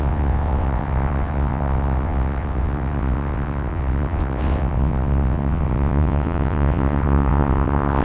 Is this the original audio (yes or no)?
no